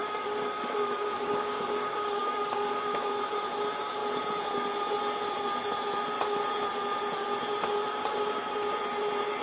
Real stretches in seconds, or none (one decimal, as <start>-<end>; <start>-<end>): 3.1-9.4